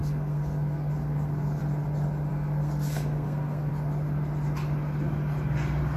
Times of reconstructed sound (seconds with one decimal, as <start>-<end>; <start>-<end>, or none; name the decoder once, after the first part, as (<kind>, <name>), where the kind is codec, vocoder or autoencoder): 0.0-1.6 (codec, SNAC); 2.3-3.7